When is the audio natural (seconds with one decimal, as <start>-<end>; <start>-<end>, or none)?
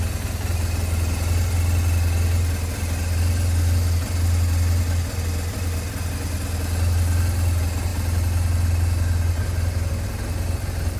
0.0-11.0